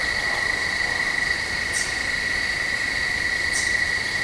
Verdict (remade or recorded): recorded